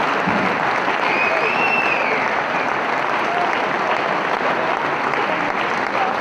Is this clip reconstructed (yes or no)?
no